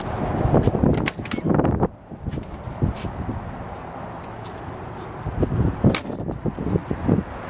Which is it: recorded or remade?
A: recorded